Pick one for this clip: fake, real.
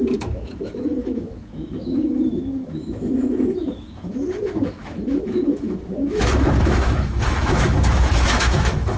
fake